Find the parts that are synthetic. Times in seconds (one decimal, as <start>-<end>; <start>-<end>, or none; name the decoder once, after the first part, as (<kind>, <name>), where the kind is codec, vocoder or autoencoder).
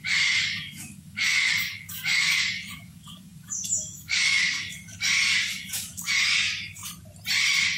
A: 0.0-6.8 (codec, DAC)